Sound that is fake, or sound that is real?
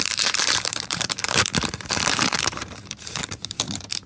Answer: fake